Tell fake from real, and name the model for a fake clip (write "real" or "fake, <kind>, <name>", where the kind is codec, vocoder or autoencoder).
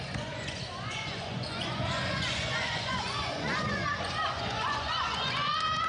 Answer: fake, vocoder, Vocos